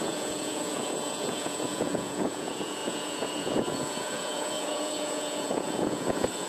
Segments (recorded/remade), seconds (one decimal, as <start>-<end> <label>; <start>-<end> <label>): 0.0-6.5 remade